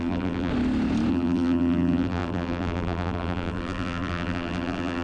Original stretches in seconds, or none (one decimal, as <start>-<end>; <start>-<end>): 0.5-1.1